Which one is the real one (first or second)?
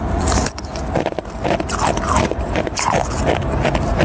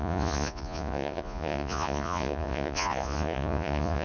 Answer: first